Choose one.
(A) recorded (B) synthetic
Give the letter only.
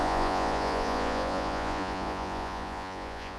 B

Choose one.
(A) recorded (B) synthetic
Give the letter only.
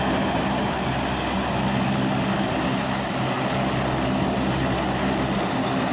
A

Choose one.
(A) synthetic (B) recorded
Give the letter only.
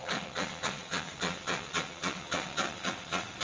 A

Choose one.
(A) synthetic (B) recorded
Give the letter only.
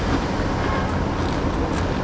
B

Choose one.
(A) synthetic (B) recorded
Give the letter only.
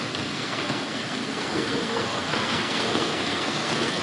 A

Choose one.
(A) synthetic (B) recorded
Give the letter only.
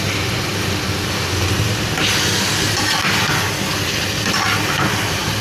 B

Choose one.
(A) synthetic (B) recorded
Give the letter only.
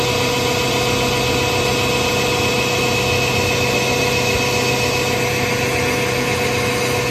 B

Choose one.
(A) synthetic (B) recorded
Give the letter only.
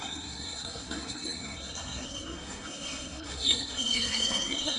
A